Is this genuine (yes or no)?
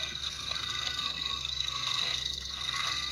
no